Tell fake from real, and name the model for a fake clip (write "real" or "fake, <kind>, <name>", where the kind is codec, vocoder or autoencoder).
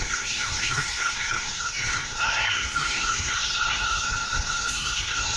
fake, codec, SNAC